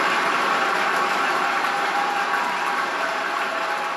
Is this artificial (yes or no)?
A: yes